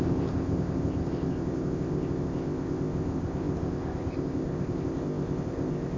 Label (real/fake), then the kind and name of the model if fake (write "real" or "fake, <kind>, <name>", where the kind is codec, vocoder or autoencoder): fake, codec, ZipCodec